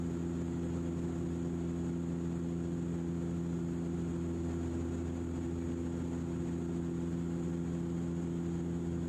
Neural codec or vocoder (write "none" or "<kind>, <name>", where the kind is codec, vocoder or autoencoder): none